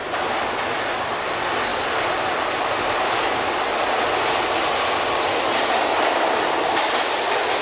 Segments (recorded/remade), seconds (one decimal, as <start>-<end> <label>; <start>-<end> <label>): 0.0-7.6 recorded